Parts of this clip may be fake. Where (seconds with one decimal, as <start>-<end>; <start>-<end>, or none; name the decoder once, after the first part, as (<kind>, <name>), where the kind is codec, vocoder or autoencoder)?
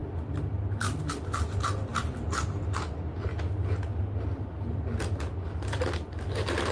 none